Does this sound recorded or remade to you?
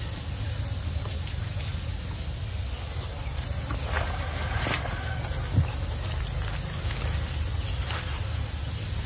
recorded